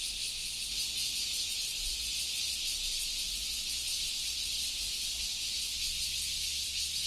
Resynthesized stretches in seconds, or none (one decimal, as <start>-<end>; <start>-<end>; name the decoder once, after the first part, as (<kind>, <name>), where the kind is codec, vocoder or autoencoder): 5.7-7.1 (vocoder, BigVGAN v2)